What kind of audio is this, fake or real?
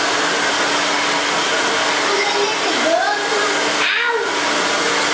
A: real